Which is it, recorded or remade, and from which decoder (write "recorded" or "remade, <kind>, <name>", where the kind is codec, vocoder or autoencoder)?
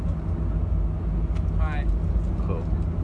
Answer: recorded